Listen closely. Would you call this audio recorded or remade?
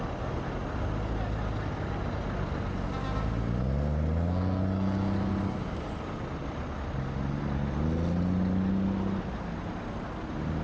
recorded